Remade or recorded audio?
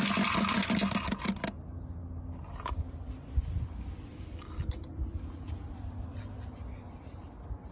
recorded